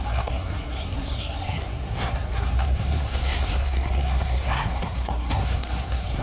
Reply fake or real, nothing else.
fake